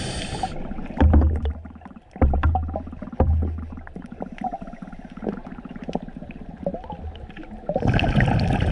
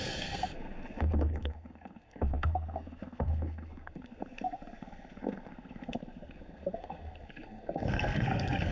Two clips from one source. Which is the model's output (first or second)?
second